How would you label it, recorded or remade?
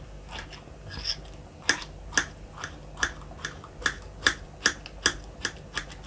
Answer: recorded